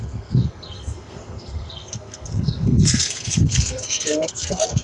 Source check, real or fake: fake